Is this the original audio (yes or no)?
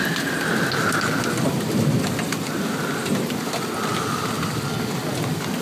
yes